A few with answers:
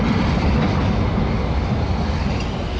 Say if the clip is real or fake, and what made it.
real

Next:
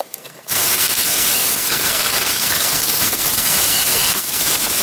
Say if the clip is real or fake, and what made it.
fake, codec, SNAC